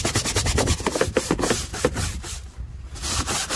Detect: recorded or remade recorded